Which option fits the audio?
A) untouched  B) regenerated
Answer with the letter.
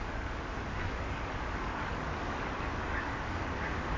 B